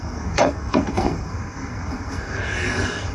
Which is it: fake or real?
fake